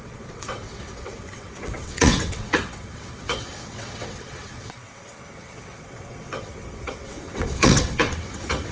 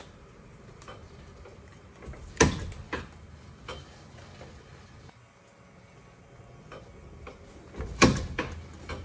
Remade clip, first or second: first